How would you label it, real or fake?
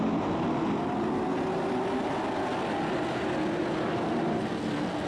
real